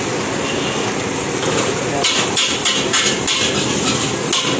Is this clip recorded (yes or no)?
yes